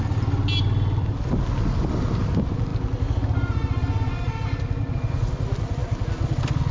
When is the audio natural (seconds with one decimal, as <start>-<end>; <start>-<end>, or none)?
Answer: 0.0-6.7